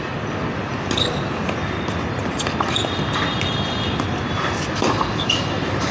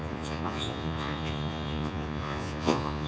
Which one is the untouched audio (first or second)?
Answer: first